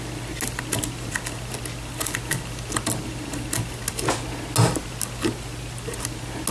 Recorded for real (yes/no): yes